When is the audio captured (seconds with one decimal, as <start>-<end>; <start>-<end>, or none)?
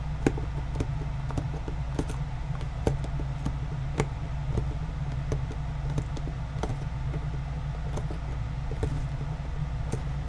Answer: 0.0-10.3